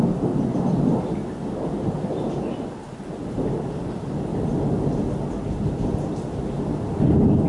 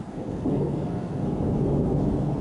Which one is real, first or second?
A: first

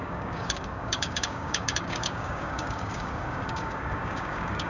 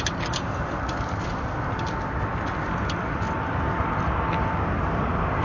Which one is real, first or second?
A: second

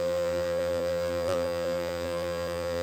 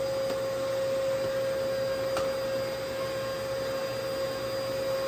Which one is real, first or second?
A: second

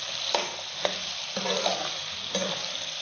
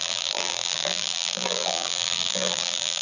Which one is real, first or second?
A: first